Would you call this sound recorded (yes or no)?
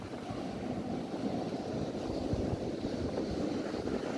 yes